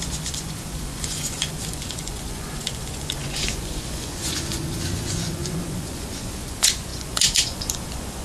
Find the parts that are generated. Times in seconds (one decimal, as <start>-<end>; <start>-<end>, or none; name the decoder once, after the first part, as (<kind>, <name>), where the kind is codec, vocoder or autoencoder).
0.0-8.2 (vocoder, Vocos)